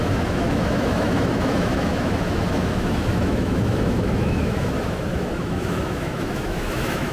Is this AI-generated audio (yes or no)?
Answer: yes